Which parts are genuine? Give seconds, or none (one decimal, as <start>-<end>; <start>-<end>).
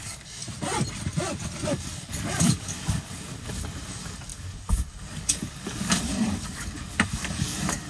0.4-1.7